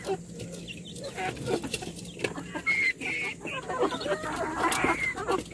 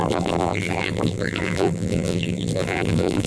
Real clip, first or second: first